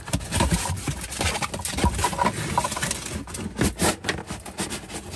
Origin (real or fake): real